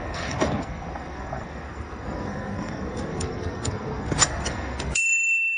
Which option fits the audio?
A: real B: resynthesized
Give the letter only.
B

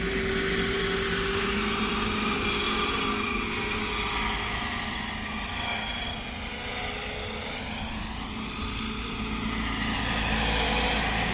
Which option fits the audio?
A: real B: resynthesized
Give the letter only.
A